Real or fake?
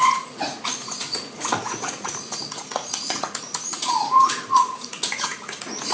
fake